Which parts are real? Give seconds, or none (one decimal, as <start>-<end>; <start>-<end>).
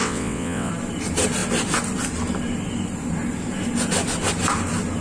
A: 0.7-5.0